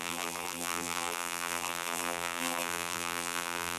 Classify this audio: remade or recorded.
remade